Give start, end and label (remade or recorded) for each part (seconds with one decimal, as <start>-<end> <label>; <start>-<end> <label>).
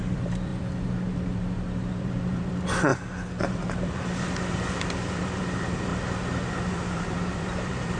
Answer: 0.0-0.5 remade; 0.5-1.9 recorded; 1.9-2.9 remade; 2.9-3.4 recorded; 3.4-5.9 remade; 5.9-6.5 recorded; 6.5-8.0 remade